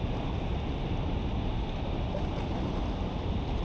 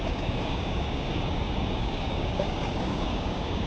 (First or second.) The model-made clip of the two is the second